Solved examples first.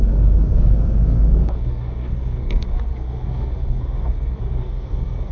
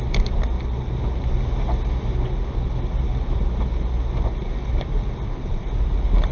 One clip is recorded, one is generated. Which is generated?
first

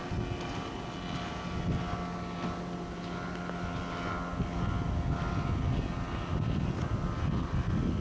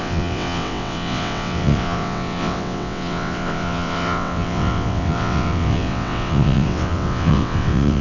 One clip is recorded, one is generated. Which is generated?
second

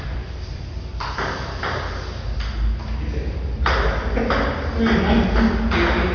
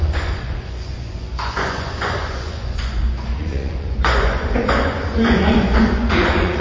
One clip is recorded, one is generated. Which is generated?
second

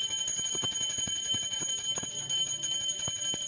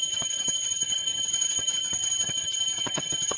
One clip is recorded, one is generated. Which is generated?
second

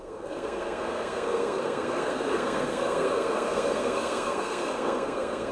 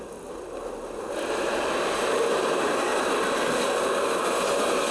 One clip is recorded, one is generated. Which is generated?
first